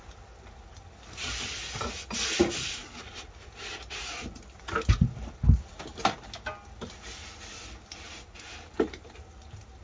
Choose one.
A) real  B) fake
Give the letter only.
A